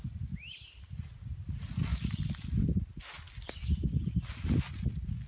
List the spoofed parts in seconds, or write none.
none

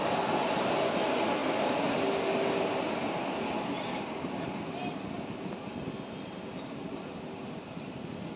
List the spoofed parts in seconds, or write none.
none

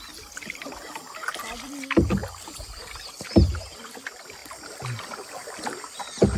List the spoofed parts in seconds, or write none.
none